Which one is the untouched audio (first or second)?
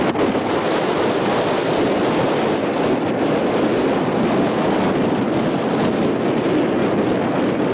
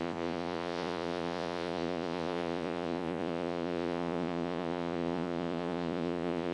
first